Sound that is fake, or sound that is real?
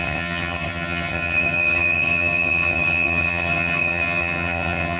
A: fake